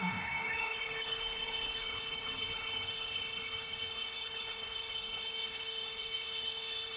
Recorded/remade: remade